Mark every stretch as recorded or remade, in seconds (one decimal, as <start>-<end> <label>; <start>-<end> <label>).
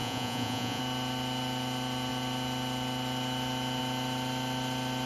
0.0-0.8 remade; 0.8-5.1 recorded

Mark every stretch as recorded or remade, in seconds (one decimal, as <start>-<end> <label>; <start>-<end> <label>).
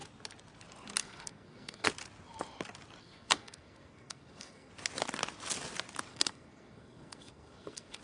0.0-1.0 recorded; 1.0-1.9 remade; 1.9-3.0 recorded; 3.0-4.7 remade; 4.7-6.1 recorded; 6.1-8.0 remade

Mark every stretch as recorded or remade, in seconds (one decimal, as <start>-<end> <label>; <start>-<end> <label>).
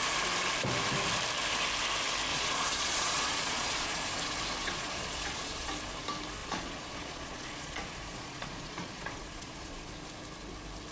0.0-2.3 recorded; 2.3-4.1 remade; 4.1-4.6 recorded; 4.6-5.7 remade; 5.7-6.4 recorded; 6.4-9.9 remade; 9.9-10.9 recorded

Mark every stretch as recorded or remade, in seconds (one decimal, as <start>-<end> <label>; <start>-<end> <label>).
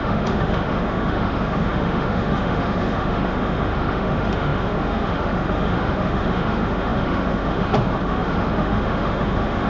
0.0-9.7 remade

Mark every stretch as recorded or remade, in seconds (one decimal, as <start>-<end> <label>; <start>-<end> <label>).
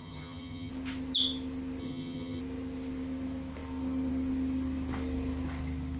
0.0-0.7 remade; 0.7-1.8 recorded; 1.8-2.4 remade; 2.4-6.0 recorded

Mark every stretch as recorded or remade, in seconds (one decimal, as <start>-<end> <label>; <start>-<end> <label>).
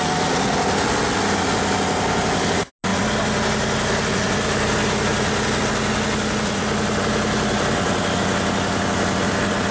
0.0-9.7 recorded